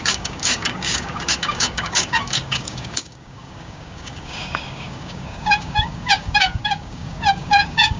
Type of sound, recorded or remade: remade